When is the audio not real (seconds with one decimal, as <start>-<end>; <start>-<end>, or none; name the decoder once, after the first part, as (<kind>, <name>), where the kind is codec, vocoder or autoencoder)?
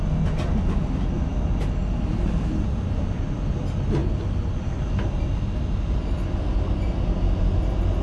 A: none